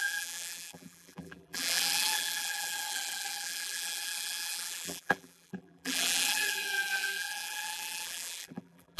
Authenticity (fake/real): fake